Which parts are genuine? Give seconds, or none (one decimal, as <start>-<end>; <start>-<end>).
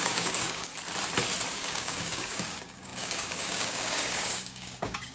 0.7-1.5